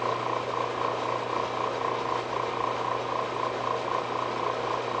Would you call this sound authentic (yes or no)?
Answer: yes